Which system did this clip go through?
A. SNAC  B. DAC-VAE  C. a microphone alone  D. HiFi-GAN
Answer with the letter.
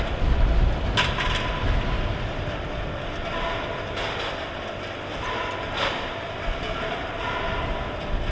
C